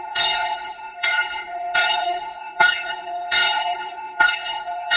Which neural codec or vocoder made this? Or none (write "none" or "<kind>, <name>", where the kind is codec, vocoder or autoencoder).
codec, HILCodec